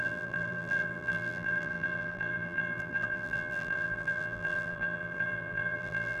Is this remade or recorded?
remade